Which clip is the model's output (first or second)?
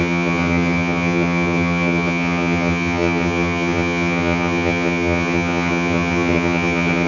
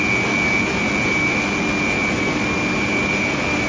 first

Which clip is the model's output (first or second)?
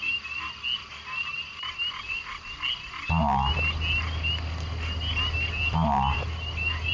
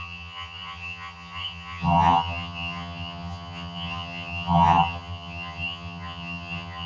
second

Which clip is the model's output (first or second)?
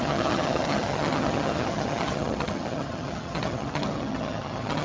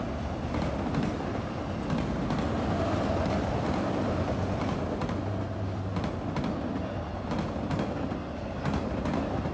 first